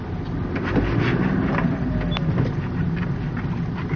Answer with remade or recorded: recorded